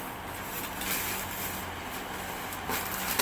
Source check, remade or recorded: recorded